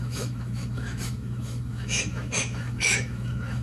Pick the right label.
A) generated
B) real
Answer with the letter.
A